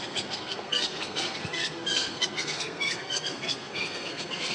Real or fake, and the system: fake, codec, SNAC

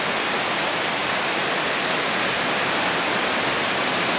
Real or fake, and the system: real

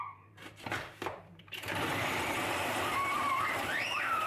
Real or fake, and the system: fake, vocoder, BigVGAN v2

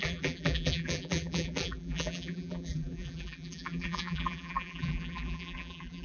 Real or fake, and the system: fake, vocoder, BigVGAN v2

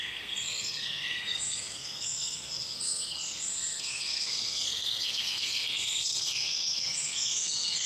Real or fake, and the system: fake, codec, SNAC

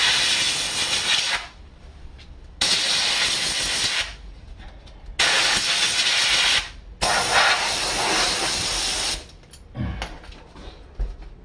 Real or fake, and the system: real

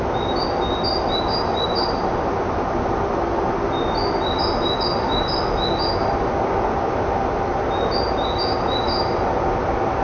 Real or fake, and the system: real